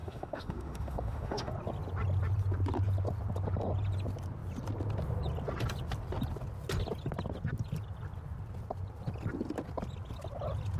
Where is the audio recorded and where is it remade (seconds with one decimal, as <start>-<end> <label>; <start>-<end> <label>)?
0.0-1.5 remade; 1.5-10.8 recorded